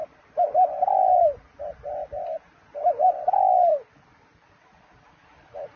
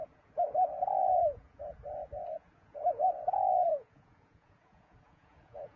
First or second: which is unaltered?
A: first